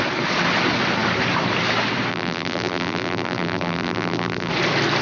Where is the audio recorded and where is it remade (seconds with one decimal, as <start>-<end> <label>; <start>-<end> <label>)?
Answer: 0.0-2.1 recorded; 2.1-4.5 remade; 4.5-5.0 recorded